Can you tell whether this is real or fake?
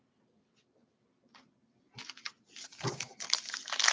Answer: real